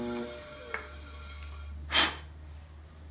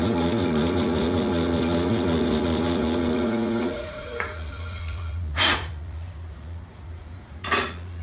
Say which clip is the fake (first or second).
second